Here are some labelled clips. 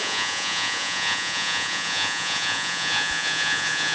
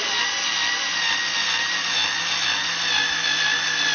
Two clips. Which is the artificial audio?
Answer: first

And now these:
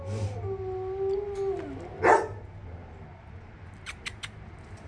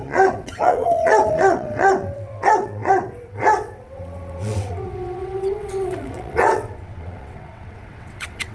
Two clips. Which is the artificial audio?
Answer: second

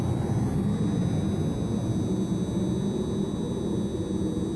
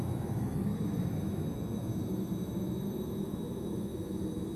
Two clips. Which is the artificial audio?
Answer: second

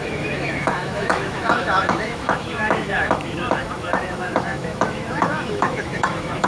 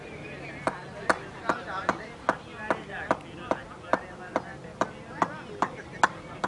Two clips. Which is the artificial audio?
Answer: first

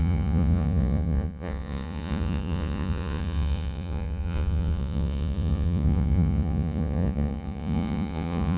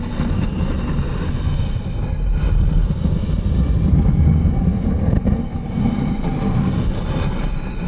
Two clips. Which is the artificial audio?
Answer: first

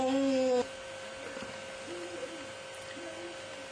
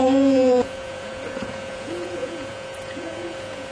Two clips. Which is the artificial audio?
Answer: second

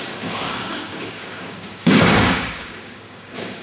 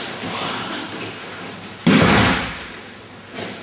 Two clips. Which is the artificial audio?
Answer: first